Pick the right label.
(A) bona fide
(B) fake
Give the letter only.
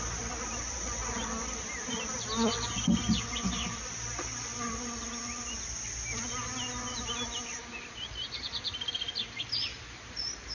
A